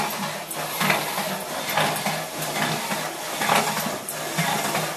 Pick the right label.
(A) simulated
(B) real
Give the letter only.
B